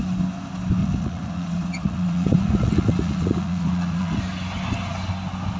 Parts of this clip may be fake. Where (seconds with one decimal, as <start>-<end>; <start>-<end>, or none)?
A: 0.8-4.2